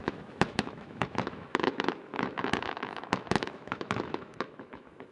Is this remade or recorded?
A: remade